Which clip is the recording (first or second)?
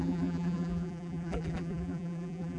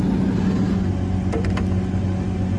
second